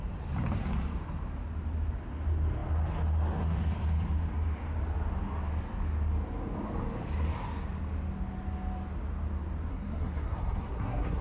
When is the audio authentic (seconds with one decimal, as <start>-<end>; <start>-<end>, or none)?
0.0-9.7